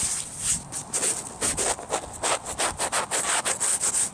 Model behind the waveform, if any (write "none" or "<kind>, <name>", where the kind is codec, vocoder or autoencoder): none